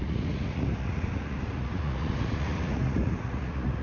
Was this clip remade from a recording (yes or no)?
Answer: yes